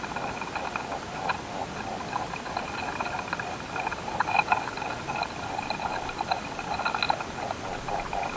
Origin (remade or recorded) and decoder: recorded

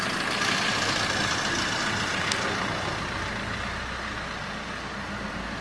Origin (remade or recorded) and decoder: recorded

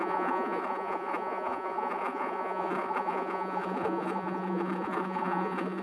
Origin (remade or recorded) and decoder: remade, vocoder, Vocos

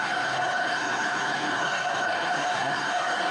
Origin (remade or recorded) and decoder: remade, codec, SNAC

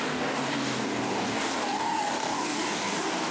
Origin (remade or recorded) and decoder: remade, codec, DAC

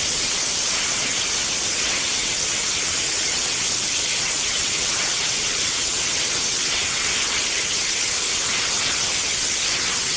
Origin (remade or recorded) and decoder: remade, vocoder, WaveNeXt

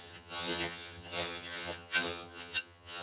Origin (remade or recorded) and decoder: remade, vocoder, HiFi-GAN